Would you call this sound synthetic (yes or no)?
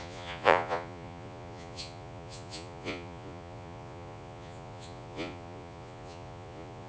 yes